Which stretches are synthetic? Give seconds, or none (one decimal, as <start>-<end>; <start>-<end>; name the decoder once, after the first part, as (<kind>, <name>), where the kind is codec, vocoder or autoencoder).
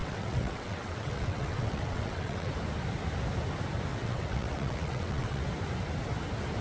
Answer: 0.0-2.5 (vocoder, WaveNeXt); 3.9-5.4